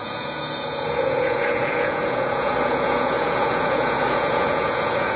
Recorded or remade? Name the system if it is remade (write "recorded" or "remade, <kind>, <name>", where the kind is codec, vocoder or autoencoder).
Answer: remade, vocoder, Vocos